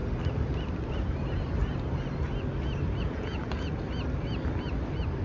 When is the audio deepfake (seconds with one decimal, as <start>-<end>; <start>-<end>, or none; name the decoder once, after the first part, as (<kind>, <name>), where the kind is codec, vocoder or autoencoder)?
3.0-3.7 (vocoder, Vocos)